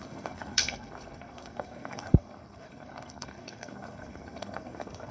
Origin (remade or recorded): remade